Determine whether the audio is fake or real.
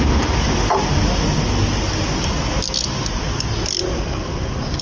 real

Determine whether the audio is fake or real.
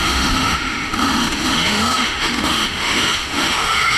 fake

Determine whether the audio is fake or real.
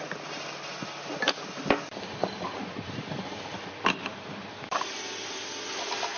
real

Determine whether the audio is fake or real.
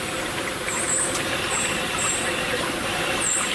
fake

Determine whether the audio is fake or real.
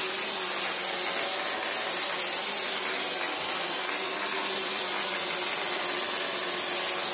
real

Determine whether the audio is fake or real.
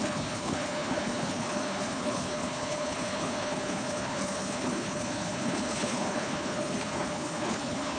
fake